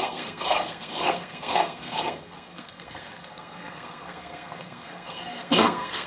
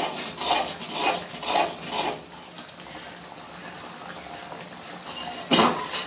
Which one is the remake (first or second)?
first